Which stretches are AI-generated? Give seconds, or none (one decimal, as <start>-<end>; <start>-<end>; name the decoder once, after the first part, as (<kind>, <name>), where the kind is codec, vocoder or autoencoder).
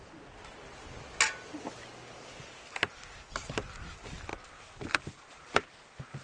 none